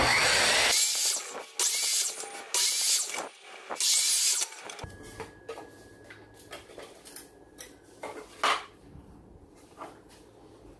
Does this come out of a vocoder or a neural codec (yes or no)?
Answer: no